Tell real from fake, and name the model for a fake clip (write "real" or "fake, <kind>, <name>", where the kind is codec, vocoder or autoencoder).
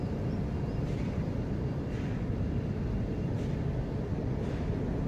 fake, vocoder, BigVGAN v2